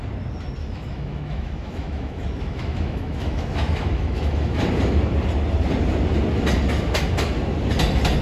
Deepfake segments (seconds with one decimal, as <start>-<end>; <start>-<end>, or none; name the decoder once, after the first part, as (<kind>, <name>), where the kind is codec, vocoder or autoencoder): 0.6-4.6 (autoencoder, DAC-VAE)